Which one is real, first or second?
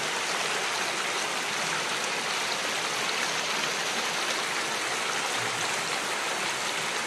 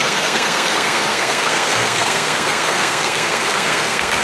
first